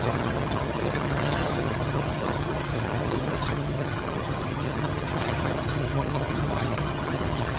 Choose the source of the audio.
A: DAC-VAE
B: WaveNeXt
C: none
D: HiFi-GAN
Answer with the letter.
D